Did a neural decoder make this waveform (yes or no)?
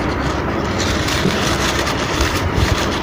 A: yes